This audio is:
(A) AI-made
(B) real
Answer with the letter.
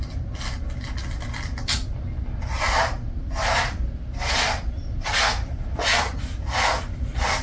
B